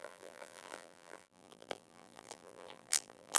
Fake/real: fake